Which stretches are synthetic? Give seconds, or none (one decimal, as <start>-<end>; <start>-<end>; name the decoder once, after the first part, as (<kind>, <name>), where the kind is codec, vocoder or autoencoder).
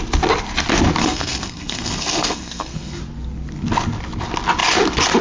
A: 1.0-3.0 (codec, SNAC)